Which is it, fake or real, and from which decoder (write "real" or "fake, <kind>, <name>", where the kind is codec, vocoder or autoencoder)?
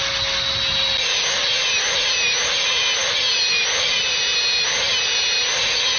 real